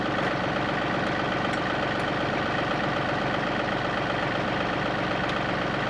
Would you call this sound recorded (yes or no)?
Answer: yes